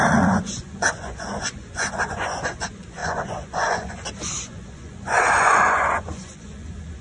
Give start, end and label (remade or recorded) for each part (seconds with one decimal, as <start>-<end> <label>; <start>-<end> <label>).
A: 0.0-7.0 remade